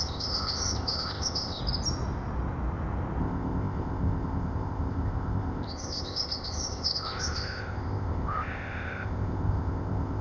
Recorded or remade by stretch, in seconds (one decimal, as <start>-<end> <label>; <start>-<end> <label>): 0.0-1.6 remade; 1.6-3.2 recorded; 3.2-10.2 remade